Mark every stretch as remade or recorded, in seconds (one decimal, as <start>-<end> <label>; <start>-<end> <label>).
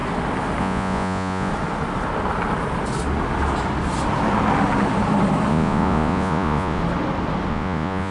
0.0-0.6 recorded; 0.6-1.5 remade; 1.5-5.5 recorded; 5.5-6.8 remade; 6.8-7.5 recorded; 7.5-8.1 remade